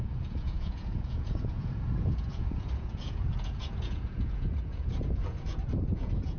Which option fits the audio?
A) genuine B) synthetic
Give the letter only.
B